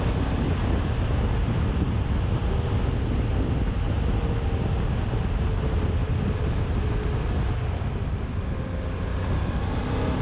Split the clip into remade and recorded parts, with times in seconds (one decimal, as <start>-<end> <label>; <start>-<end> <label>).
0.0-10.2 recorded